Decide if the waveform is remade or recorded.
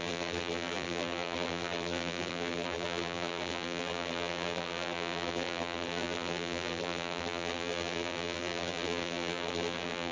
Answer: remade